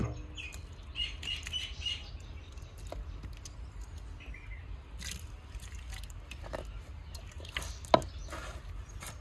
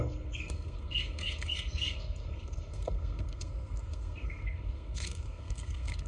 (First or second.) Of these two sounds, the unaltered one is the first